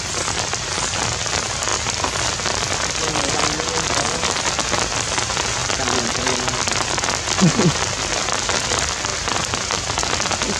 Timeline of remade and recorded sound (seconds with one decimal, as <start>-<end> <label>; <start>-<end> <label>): 0.0-10.6 recorded